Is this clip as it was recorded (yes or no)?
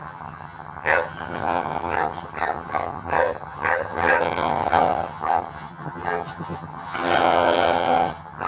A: no